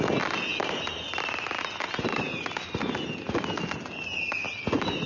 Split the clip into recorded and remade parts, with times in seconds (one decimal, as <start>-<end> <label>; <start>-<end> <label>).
0.0-5.1 recorded